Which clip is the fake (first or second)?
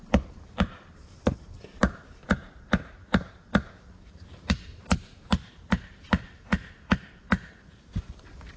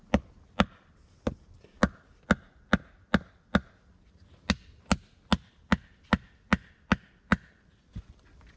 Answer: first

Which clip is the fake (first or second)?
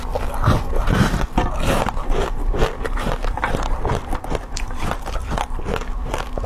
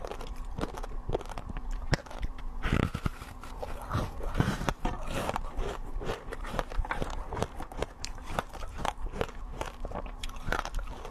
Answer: second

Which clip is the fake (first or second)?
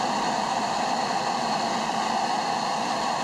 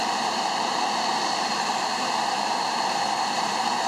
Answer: second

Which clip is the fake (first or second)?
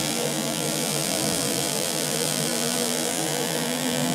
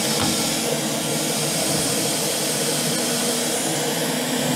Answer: first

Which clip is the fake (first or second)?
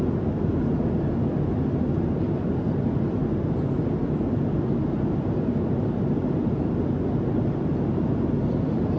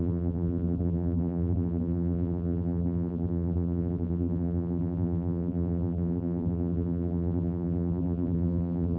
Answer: second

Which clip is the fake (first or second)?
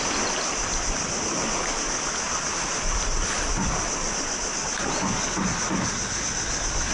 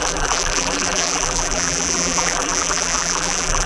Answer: second